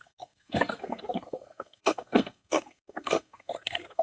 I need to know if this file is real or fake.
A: fake